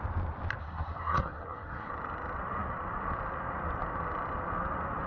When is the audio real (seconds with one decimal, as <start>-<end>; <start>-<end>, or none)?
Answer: 0.0-0.6; 1.9-5.1